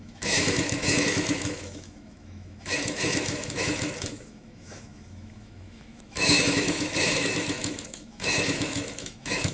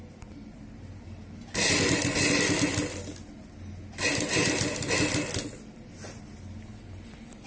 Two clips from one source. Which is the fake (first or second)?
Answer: first